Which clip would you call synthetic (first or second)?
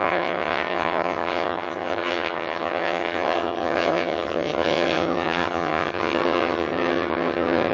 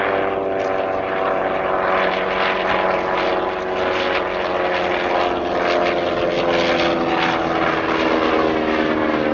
first